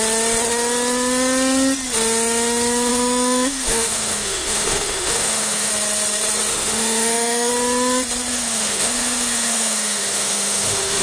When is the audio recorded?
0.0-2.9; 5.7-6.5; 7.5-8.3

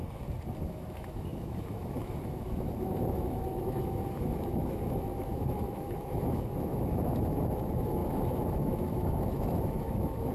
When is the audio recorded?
0.0-0.6

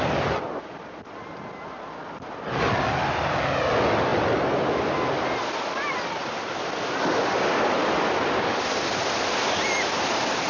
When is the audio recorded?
0.0-10.5

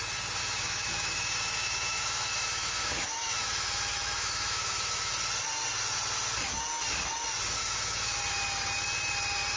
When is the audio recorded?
0.0-0.4; 5.1-7.6; 8.2-9.6